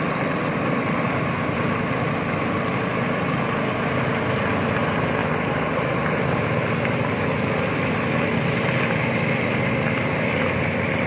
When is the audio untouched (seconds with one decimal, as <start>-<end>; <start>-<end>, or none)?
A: 0.0-11.1